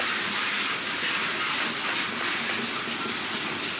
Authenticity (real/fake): real